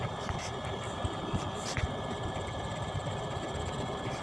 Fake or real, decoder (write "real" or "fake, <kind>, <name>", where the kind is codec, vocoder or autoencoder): real